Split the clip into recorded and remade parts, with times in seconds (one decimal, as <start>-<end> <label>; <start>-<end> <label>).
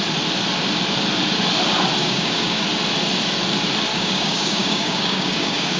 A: 0.0-2.0 recorded; 2.0-2.6 remade; 2.6-3.9 recorded; 3.9-5.8 remade